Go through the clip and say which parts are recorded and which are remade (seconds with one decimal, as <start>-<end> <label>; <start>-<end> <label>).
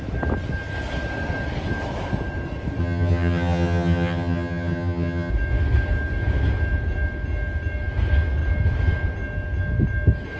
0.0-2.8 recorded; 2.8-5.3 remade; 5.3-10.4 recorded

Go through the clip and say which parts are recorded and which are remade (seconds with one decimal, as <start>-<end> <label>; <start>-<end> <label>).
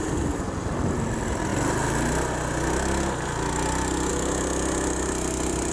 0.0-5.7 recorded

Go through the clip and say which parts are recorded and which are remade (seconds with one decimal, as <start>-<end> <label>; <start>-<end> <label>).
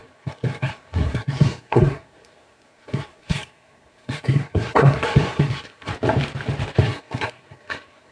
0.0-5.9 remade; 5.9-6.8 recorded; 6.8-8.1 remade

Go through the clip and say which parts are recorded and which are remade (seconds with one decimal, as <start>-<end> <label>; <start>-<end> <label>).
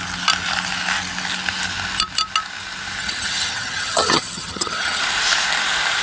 0.0-3.0 recorded; 3.0-5.0 remade; 5.0-6.0 recorded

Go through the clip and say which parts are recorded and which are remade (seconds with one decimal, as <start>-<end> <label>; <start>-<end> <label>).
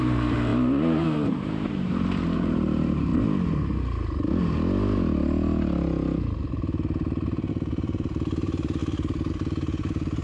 0.0-3.1 remade; 3.1-7.5 recorded; 7.5-8.8 remade; 8.8-9.3 recorded; 9.3-10.2 remade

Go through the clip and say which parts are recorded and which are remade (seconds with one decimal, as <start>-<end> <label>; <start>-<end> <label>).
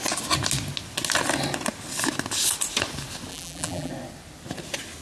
0.0-3.3 recorded; 3.3-3.9 remade; 3.9-5.0 recorded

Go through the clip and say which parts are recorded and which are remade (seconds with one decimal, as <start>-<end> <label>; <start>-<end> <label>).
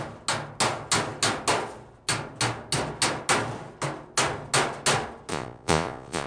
0.0-5.3 recorded; 5.3-6.3 remade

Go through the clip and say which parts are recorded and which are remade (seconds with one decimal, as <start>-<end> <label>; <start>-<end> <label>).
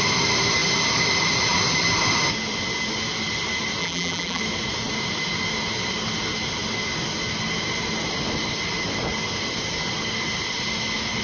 0.0-3.8 recorded; 3.8-4.4 remade; 4.4-11.2 recorded